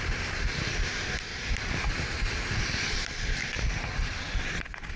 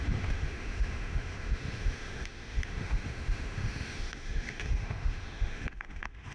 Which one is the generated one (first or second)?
second